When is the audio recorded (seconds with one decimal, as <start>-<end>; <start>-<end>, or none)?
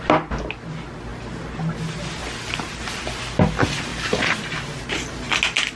0.0-1.1; 1.6-2.2; 3.0-3.9; 5.3-5.8